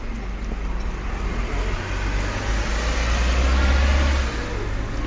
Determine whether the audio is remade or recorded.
recorded